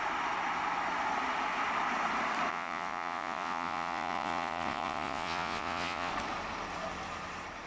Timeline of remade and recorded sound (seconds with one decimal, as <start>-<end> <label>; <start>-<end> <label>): 0.0-2.5 recorded; 2.5-6.1 remade; 6.1-7.7 recorded

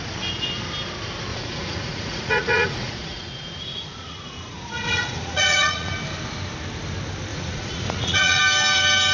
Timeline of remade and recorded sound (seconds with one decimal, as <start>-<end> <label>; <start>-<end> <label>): 0.0-1.3 recorded; 1.3-5.9 remade; 5.9-7.3 recorded; 7.3-8.4 remade; 8.4-9.1 recorded

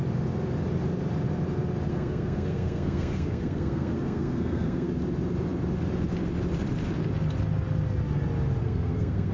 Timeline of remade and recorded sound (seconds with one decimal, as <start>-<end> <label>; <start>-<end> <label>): 0.0-1.9 recorded; 1.9-4.9 remade; 4.9-8.6 recorded; 8.6-9.3 remade

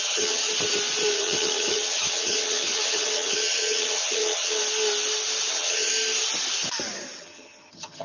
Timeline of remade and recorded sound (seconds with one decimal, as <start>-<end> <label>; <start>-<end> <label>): 0.0-0.4 remade; 0.4-1.1 recorded; 1.1-4.6 remade; 4.6-5.5 recorded; 5.5-5.9 remade; 5.9-7.2 recorded; 7.2-8.0 remade

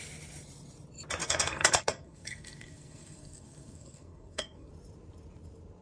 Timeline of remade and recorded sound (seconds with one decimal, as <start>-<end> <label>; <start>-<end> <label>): 0.0-1.2 recorded; 1.2-4.7 remade; 4.7-5.8 recorded

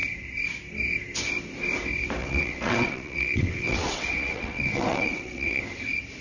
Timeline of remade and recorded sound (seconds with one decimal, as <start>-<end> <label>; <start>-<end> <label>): 0.0-2.2 recorded; 2.2-5.6 remade; 5.6-6.2 recorded

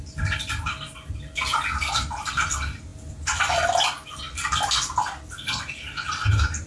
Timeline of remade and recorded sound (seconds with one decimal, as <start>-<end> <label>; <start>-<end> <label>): 0.0-6.7 recorded